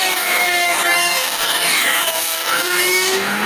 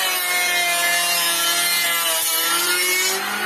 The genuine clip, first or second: second